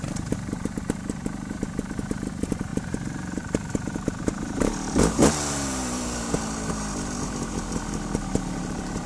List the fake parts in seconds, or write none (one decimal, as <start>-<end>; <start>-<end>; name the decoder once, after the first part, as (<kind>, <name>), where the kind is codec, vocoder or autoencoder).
0.0-9.1 (vocoder, BigVGAN v2)